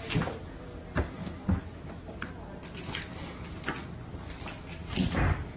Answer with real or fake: real